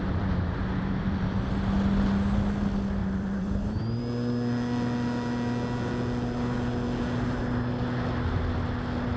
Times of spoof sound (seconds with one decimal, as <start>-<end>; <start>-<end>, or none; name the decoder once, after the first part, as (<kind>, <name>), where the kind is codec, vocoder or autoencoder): 0.0-1.5 (vocoder, BigVGAN v2); 3.0-4.0